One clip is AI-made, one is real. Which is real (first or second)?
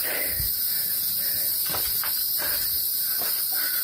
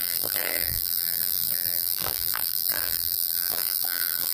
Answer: first